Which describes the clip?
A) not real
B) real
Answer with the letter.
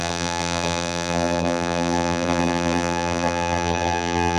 A